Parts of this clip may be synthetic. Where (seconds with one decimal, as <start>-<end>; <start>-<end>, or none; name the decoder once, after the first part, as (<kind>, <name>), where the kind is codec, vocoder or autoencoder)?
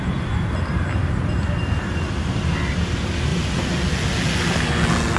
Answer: none